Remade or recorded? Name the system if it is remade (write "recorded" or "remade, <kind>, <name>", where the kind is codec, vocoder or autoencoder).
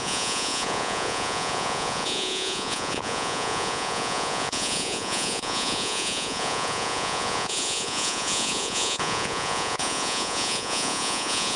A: remade, vocoder, Vocos